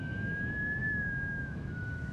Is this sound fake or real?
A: fake